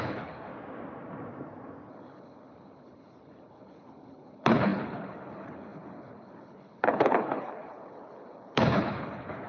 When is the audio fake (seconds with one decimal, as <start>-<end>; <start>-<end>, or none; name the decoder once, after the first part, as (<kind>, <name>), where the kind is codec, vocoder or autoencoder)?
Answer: 0.0-0.5 (codec, HILCodec); 1.9-9.5

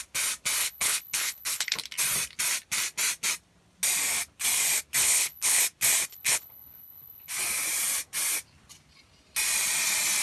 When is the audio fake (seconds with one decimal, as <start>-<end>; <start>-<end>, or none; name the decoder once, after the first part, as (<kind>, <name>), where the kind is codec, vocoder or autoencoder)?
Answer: 0.6-1.8 (codec, HILCodec); 5.0-5.6; 6.1-7.3

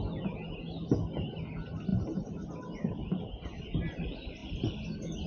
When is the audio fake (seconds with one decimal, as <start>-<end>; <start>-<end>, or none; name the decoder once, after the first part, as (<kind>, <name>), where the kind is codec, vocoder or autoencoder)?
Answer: none

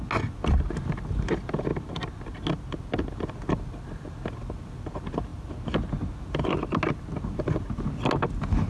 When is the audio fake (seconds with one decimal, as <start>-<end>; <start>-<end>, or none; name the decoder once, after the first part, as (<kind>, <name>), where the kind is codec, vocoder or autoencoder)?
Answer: none

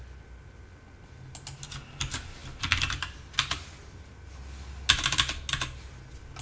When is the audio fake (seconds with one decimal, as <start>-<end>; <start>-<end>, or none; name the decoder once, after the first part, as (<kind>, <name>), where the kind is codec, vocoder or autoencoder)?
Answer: none